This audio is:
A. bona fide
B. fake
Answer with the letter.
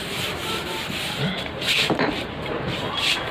B